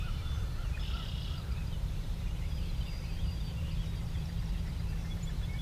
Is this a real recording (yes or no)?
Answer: no